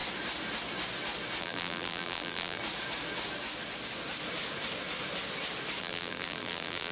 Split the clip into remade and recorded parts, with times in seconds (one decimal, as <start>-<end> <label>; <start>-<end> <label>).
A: 0.0-1.4 recorded; 1.4-2.6 remade; 2.6-5.8 recorded; 5.8-6.9 remade